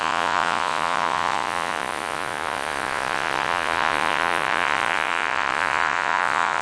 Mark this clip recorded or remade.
remade